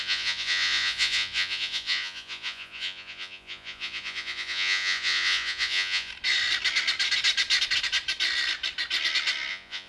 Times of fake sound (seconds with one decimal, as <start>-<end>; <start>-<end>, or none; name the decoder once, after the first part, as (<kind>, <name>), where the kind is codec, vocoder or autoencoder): 0.0-6.1 (vocoder, Vocos); 9.5-9.9